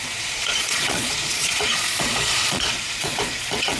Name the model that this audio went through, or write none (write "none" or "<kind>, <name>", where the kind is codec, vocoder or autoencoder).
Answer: vocoder, Vocos